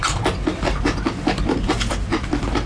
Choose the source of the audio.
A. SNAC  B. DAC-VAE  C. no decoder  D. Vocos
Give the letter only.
C